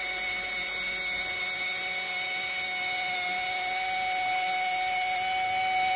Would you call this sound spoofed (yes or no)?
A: no